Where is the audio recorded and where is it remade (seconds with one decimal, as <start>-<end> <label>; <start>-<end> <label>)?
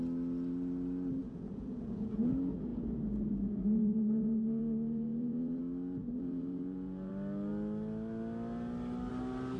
0.0-1.2 recorded; 1.2-2.3 remade; 2.3-2.7 recorded; 2.7-5.6 remade; 5.6-6.0 recorded; 6.0-7.1 remade; 7.1-9.6 recorded